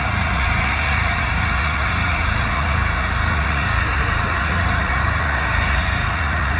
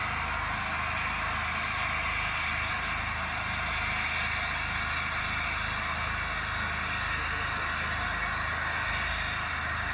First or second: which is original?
second